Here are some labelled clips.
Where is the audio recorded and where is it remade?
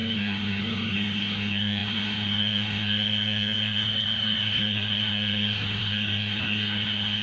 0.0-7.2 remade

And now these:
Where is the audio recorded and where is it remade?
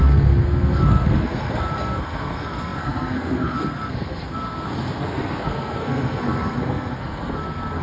0.0-7.8 remade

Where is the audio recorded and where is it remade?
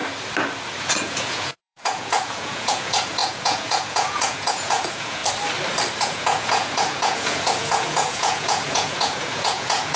0.0-0.8 recorded; 0.8-5.2 remade; 5.2-6.0 recorded; 6.0-10.0 remade